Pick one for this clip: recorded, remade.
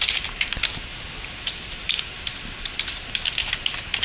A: recorded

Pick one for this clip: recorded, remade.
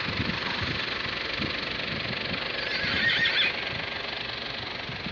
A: recorded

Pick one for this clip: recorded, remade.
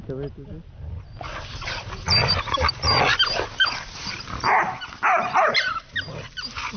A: recorded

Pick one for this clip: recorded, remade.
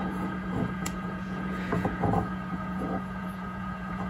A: remade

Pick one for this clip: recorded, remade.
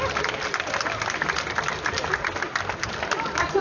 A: recorded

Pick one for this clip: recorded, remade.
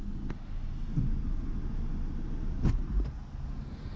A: recorded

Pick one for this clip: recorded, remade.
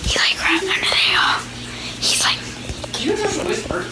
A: recorded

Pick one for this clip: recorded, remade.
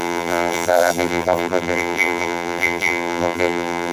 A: remade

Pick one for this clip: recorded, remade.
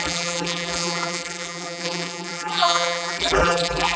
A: remade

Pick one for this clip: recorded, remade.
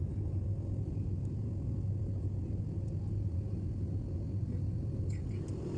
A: recorded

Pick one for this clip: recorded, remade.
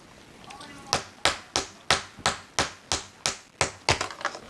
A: recorded